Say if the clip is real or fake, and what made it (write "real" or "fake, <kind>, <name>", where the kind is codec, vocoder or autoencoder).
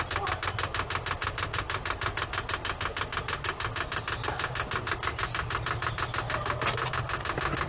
real